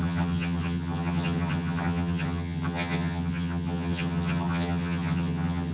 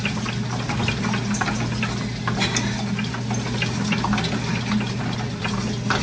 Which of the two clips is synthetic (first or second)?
first